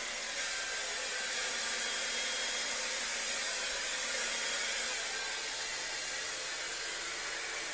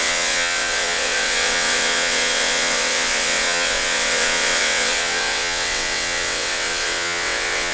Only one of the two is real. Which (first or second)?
first